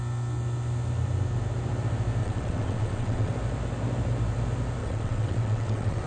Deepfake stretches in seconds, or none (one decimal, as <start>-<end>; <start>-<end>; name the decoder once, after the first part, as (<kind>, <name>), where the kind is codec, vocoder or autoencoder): 2.2-3.3 (vocoder, WaveNeXt); 4.8-6.1